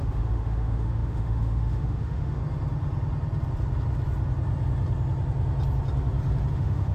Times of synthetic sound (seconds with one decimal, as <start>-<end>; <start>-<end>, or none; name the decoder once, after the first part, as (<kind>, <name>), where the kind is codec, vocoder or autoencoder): 0.0-2.4 (autoencoder, DAC-VAE); 6.5-6.9